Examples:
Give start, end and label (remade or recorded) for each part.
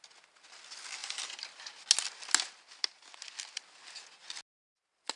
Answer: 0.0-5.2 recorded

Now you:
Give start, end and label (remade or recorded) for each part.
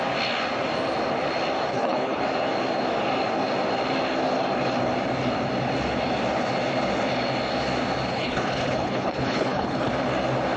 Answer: 0.0-1.7 recorded; 1.7-2.2 remade; 2.2-8.1 recorded; 8.1-9.9 remade; 9.9-10.6 recorded